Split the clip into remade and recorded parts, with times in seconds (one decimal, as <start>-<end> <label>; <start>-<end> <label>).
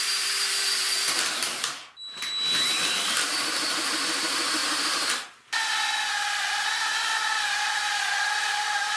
0.0-9.0 recorded